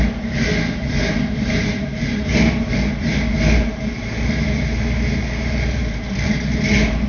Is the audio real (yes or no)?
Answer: no